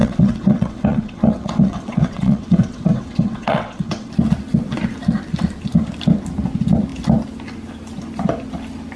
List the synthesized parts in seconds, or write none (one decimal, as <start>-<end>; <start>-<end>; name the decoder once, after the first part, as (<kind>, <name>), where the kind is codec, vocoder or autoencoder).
0.0-4.1 (vocoder, WaveNeXt)